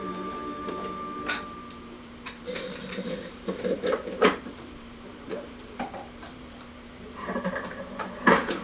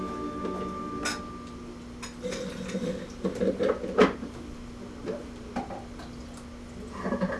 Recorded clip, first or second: second